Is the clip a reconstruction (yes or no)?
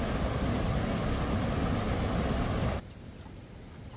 no